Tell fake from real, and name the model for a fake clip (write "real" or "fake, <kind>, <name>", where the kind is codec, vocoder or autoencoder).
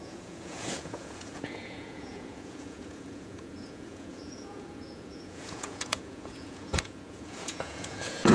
fake, vocoder, Vocos